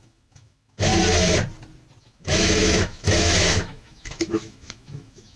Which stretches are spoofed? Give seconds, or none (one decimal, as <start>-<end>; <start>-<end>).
0.0-0.9; 2.0-5.4